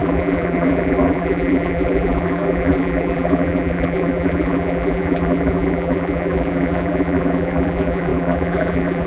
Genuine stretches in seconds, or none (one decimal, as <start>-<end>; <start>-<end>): none